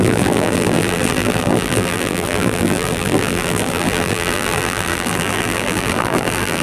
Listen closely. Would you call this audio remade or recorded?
remade